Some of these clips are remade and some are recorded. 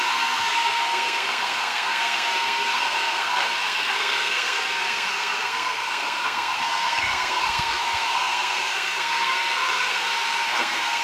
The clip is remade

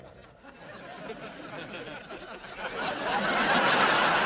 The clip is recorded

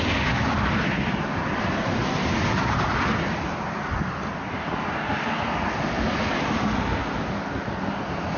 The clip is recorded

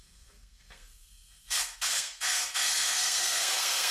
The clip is remade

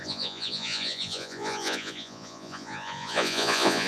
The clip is remade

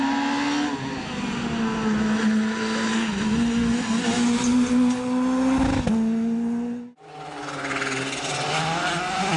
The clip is recorded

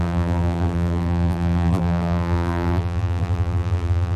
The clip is remade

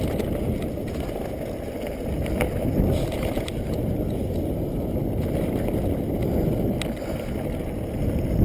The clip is recorded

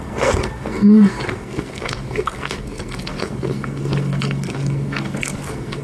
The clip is remade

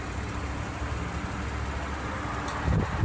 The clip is recorded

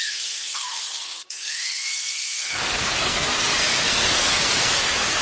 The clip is remade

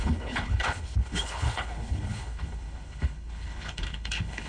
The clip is remade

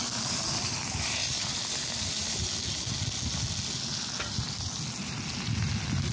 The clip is recorded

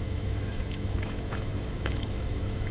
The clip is remade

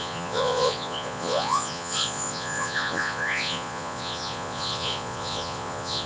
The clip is remade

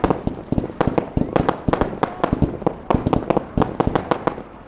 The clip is recorded